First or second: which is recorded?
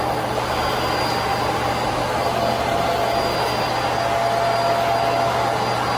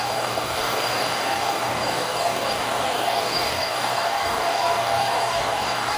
first